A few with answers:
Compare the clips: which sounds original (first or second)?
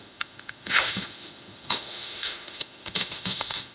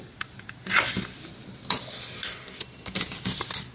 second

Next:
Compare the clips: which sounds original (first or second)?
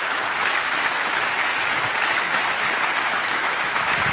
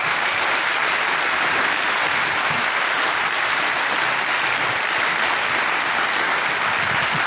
second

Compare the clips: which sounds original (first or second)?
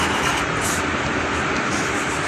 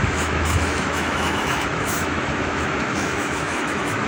first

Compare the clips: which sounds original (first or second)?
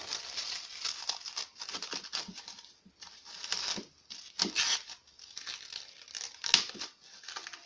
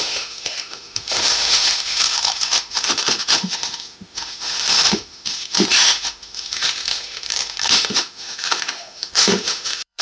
first